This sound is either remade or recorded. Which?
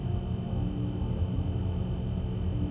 recorded